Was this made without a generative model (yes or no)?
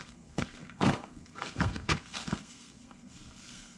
no